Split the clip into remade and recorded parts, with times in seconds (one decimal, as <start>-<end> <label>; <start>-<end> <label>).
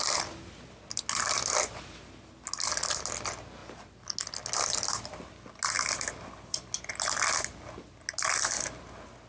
0.0-9.3 recorded